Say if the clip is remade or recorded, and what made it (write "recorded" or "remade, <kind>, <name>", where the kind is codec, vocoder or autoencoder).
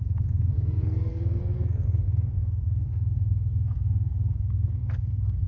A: remade, codec, SNAC